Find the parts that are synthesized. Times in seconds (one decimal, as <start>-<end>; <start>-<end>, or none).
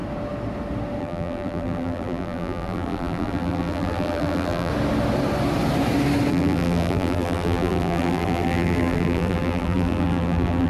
1.0-4.7; 6.3-10.7